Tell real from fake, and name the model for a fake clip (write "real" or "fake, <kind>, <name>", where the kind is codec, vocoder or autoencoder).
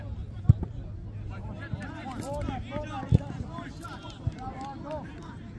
fake, vocoder, BigVGAN v2